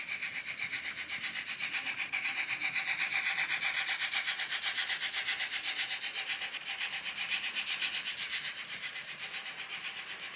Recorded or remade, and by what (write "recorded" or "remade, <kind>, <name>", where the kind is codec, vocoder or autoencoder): remade, vocoder, BigVGAN v2